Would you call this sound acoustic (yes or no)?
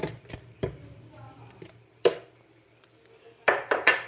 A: no